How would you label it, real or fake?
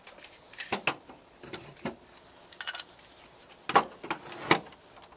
real